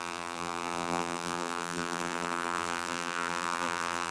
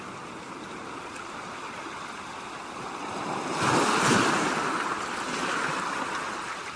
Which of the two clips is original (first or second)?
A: second